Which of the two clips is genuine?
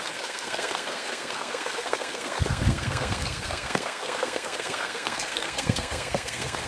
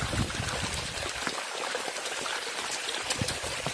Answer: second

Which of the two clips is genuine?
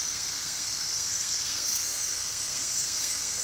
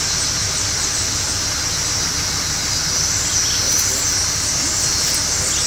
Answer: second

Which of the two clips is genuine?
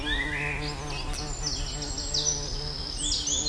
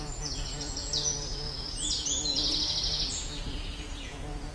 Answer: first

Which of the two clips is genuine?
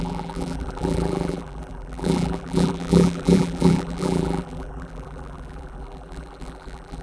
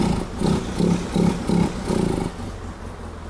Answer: second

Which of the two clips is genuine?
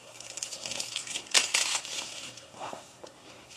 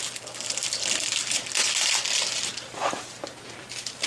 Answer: second